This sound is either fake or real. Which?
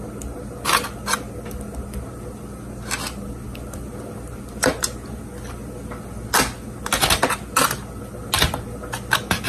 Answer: real